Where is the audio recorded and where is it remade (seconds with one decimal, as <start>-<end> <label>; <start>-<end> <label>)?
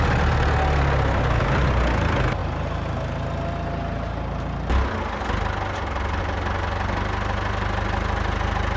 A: 0.0-8.8 recorded